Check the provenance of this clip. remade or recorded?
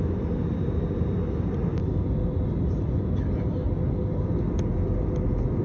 recorded